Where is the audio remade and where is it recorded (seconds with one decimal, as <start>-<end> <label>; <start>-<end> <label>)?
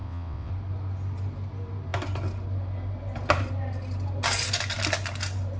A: 0.0-0.5 remade; 0.5-5.6 recorded